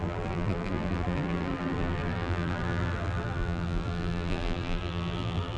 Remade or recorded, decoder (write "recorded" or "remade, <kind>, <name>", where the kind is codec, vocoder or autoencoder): remade, vocoder, BigVGAN v2